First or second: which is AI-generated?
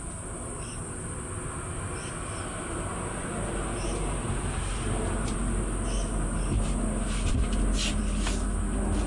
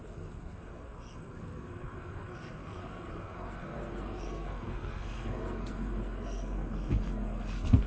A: second